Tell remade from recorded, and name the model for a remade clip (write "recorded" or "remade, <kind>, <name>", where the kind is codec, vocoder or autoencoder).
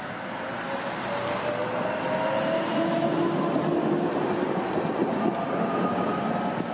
recorded